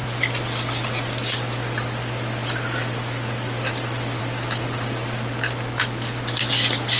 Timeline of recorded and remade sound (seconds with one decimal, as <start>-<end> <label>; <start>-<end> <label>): 0.0-7.0 recorded